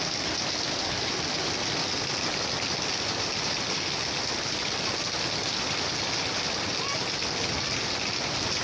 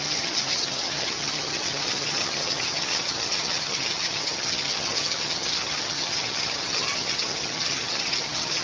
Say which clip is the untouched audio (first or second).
first